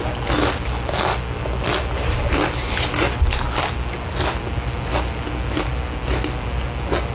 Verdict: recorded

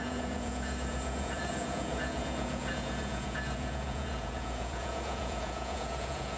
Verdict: remade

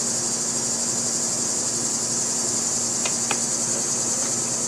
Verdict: recorded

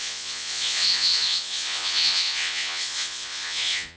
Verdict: remade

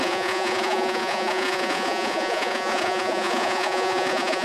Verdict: remade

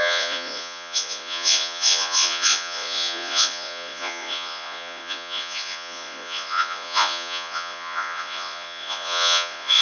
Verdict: remade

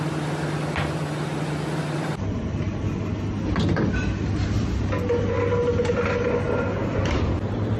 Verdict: recorded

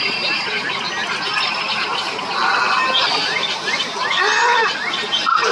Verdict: recorded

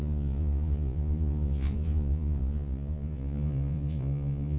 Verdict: remade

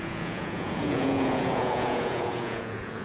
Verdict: remade